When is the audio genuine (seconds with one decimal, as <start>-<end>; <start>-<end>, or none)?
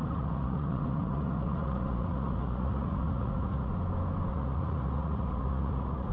3.7-4.3